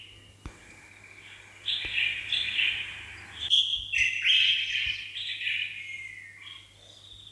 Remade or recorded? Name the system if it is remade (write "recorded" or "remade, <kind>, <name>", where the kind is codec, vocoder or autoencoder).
recorded